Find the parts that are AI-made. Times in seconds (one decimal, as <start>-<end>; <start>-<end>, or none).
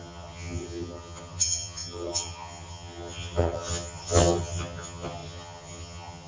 0.0-6.3